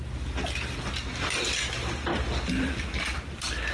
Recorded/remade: recorded